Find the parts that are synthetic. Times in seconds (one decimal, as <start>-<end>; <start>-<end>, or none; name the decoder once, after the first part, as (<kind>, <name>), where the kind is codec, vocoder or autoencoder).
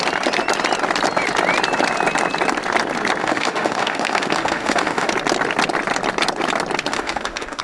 3.2-5.1 (autoencoder, DAC-VAE); 6.9-7.6